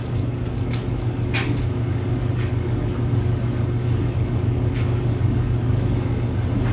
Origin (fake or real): fake